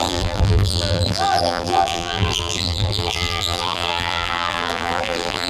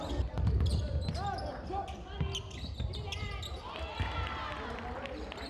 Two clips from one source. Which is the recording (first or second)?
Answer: second